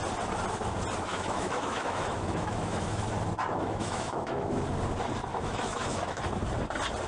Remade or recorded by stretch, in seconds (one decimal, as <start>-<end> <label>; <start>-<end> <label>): 0.0-1.1 recorded; 1.1-3.0 remade; 3.0-3.5 recorded; 3.5-4.6 remade; 4.6-5.3 recorded; 5.3-6.2 remade; 6.2-7.1 recorded